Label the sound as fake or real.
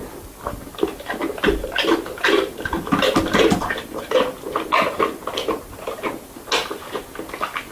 real